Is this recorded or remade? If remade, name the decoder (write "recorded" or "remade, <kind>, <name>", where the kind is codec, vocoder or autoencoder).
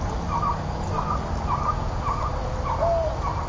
recorded